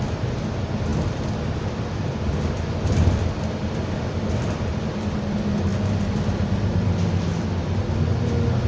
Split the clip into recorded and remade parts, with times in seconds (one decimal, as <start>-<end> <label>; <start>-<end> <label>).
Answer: 0.0-8.7 recorded